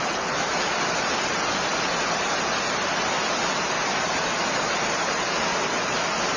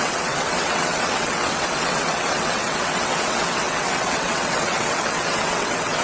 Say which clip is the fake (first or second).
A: second